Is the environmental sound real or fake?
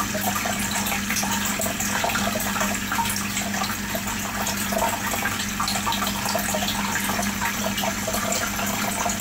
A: real